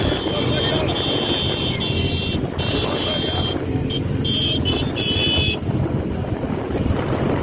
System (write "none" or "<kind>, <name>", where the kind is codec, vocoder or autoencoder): none